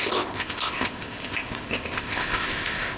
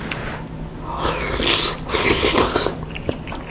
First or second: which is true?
second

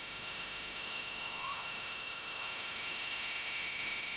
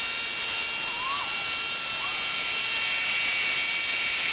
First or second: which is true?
second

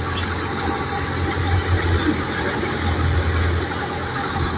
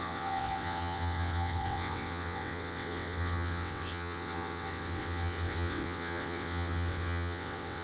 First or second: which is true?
first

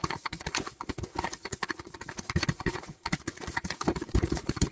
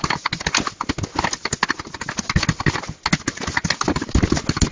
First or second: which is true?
second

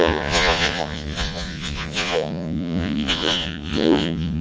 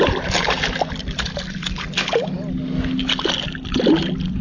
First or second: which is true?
second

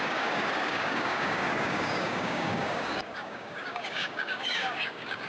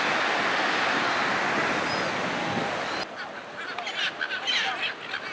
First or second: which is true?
second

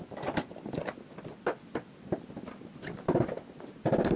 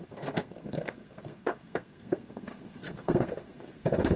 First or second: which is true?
first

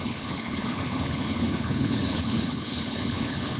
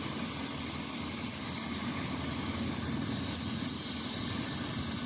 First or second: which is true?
second